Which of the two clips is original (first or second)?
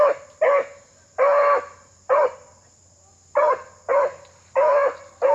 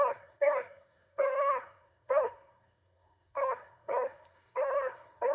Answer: first